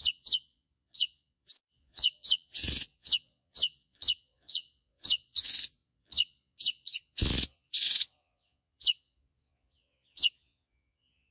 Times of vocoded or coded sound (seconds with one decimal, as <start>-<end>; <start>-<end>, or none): 0.0-11.3